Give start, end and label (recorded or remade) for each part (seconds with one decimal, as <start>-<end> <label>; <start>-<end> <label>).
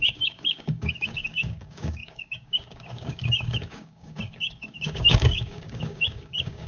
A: 0.0-6.7 remade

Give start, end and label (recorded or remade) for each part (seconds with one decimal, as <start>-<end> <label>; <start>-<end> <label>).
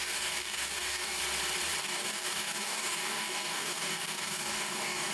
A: 0.0-1.2 remade; 1.2-1.8 recorded; 1.8-5.1 remade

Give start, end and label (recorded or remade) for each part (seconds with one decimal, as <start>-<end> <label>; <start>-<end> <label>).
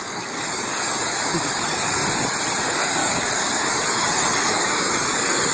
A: 0.0-2.0 remade; 2.0-2.6 recorded; 2.6-5.5 remade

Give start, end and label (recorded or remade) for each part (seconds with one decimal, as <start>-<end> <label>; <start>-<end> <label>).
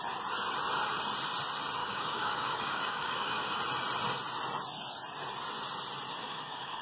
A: 0.0-1.8 recorded; 1.8-3.6 remade; 3.6-6.2 recorded; 6.2-6.8 remade